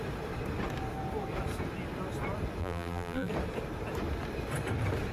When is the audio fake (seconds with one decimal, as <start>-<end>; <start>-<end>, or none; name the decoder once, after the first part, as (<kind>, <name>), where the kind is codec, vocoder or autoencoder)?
2.6-3.3 (vocoder, BigVGAN v2)